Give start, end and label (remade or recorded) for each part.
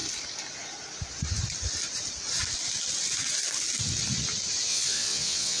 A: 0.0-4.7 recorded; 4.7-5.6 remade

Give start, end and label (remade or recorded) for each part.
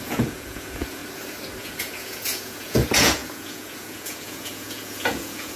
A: 0.0-1.0 remade; 1.0-1.6 recorded; 1.6-5.6 remade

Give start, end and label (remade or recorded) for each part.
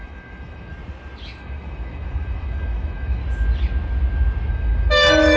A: 0.0-0.7 remade; 0.7-1.4 recorded; 1.4-3.2 remade; 3.2-4.5 recorded; 4.5-5.4 remade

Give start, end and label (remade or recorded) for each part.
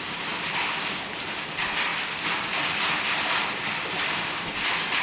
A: 0.0-5.0 recorded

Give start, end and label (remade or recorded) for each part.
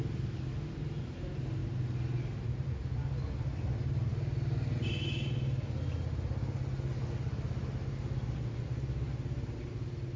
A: 0.0-10.2 recorded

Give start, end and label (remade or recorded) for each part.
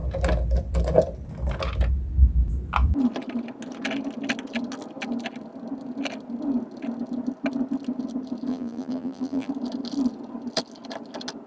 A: 0.0-8.5 recorded; 8.5-9.5 remade; 9.5-11.5 recorded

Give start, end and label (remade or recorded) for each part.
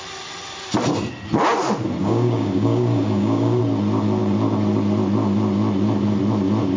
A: 0.0-2.0 recorded; 2.0-3.6 remade; 3.6-6.8 recorded